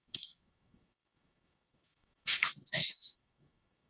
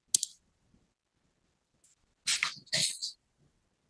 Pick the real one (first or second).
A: second